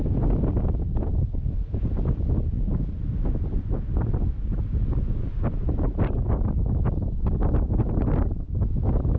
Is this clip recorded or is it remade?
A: recorded